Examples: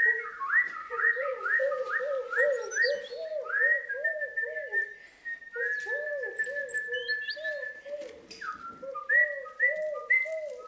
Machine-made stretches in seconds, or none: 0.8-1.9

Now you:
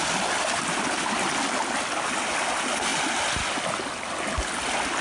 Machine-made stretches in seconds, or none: none

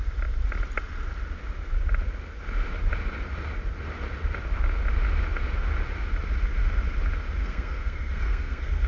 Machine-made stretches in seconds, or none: 7.4-8.9

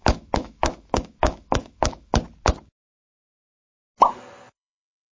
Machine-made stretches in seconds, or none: 0.0-2.1; 4.5-5.1

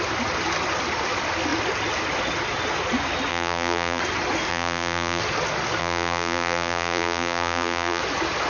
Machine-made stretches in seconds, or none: 3.3-4.0; 4.5-5.2; 5.8-8.0

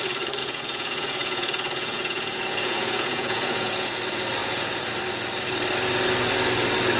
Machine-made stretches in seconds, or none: 0.4-4.0; 4.4-4.9

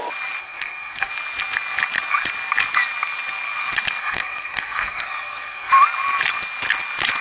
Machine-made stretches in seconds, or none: 0.4-1.1; 4.0-5.7